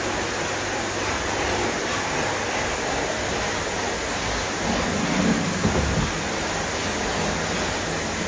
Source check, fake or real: real